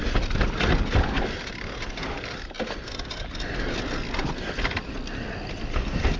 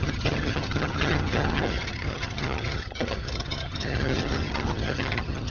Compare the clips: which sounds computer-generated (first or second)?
second